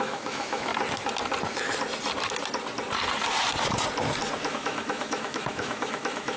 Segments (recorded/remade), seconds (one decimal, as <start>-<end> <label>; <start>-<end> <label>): 0.0-0.7 remade; 0.7-4.5 recorded; 4.5-6.4 remade